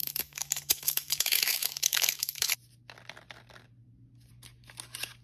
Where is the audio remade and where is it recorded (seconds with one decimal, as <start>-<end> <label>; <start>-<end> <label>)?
0.0-2.5 remade; 2.5-5.2 recorded

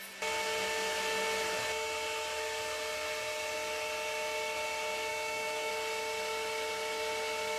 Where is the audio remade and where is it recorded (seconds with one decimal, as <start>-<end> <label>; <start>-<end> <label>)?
0.0-5.1 recorded; 5.1-5.7 remade; 5.7-7.6 recorded

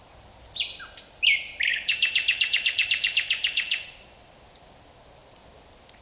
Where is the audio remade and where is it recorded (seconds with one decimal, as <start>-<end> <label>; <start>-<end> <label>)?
0.0-1.7 recorded; 1.7-3.8 remade; 3.8-6.0 recorded

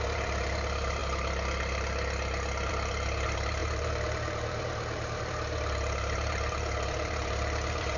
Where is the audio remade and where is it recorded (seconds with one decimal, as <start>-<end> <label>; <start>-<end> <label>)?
0.0-1.0 remade; 1.0-2.7 recorded; 2.7-8.0 remade

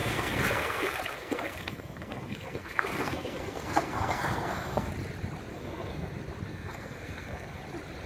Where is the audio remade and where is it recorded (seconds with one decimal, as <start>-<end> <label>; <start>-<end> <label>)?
0.0-4.9 remade; 4.9-5.5 recorded; 5.5-6.1 remade; 6.1-6.5 recorded; 6.5-7.6 remade; 7.6-8.1 recorded

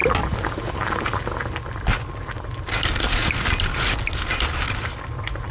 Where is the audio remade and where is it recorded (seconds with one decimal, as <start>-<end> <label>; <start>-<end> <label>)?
0.0-5.5 recorded